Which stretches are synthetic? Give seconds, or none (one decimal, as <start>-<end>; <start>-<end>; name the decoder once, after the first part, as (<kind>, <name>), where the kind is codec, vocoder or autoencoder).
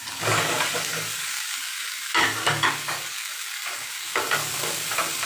0.0-5.3 (codec, DAC)